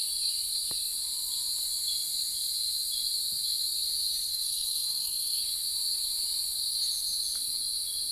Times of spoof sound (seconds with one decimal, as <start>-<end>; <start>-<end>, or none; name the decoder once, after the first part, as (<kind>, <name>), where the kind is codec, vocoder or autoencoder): 4.3-5.4 (codec, SNAC)